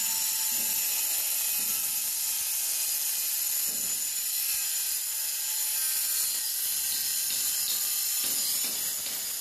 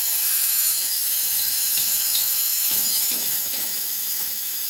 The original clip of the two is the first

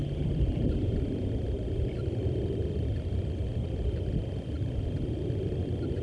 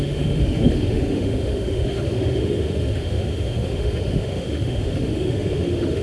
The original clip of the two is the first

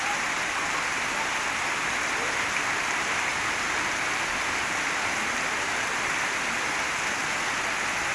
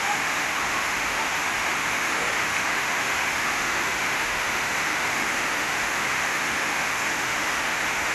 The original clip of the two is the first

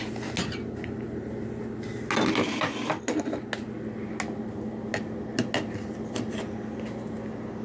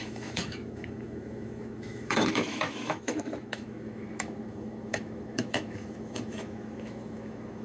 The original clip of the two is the first